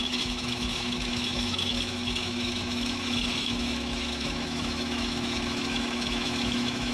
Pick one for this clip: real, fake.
fake